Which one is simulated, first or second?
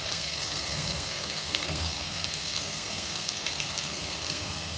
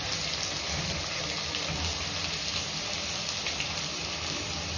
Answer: first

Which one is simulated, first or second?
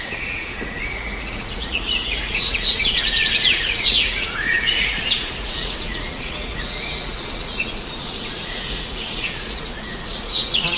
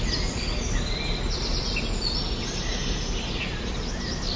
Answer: first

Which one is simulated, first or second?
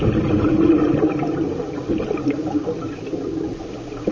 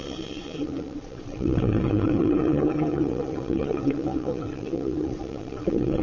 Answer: second